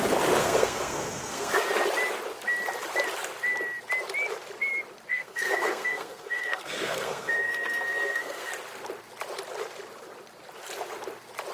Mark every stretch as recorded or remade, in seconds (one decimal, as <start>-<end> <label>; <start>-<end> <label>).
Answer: 0.0-0.4 recorded; 0.4-1.7 remade; 1.7-5.1 recorded; 5.1-8.5 remade; 8.5-11.5 recorded